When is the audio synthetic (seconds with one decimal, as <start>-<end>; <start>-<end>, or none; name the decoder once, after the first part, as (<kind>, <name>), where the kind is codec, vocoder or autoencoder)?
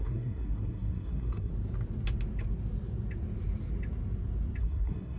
0.0-1.5 (codec, SNAC); 4.6-5.2